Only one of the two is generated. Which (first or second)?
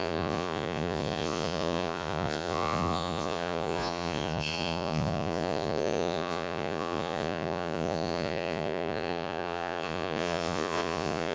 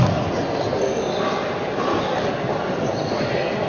first